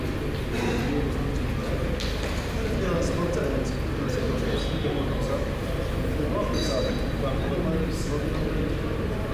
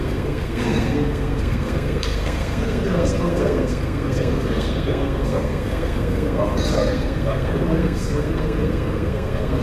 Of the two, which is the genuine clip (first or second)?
first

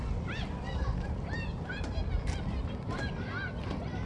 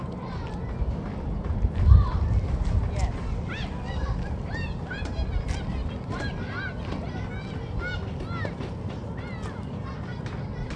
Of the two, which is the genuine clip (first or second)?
second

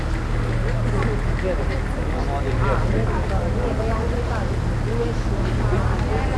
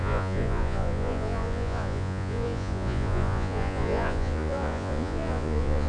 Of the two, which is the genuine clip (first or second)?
first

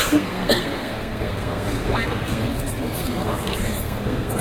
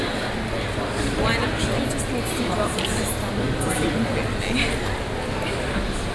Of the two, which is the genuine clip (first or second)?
second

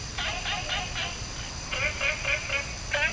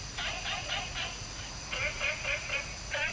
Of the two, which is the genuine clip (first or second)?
first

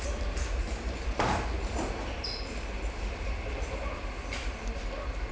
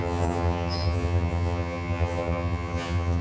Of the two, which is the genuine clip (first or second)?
first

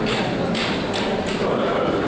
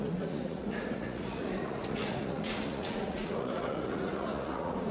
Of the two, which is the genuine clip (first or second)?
first